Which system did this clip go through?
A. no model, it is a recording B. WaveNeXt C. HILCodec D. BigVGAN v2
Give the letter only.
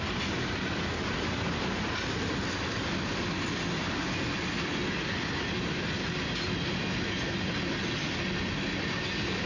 A